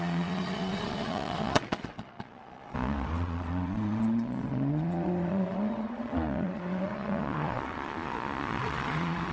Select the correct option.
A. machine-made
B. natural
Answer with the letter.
A